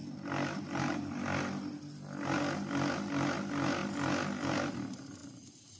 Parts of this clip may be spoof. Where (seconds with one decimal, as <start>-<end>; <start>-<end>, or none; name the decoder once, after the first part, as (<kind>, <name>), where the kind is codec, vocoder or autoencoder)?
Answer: none